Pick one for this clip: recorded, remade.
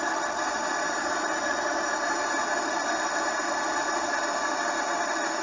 remade